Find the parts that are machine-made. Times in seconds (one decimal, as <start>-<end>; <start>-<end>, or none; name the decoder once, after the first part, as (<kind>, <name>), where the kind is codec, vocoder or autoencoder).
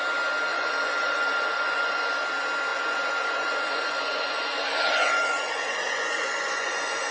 0.5-2.1 (vocoder, Vocos); 2.7-7.1